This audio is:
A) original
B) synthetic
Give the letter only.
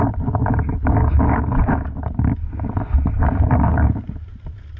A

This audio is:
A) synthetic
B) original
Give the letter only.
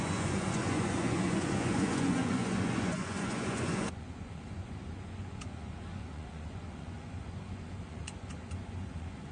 A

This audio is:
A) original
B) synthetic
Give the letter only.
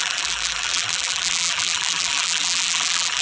B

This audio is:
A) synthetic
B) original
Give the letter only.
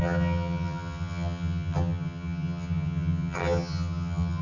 A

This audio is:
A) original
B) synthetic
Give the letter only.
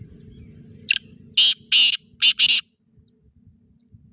A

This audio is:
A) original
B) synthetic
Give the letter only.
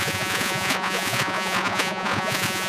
B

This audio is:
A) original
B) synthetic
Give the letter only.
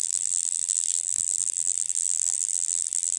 B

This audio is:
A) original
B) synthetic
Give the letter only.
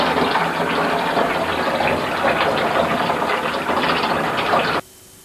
A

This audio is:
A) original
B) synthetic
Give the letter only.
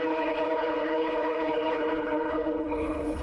B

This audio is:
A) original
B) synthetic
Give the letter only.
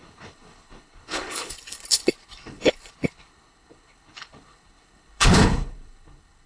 B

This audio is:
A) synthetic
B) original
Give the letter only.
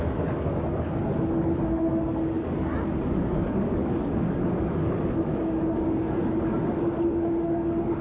A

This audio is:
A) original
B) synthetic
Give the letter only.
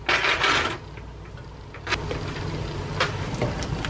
A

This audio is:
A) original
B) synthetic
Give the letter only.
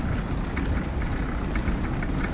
A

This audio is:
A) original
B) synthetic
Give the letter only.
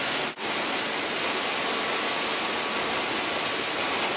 A